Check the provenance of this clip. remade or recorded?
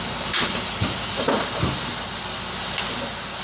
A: recorded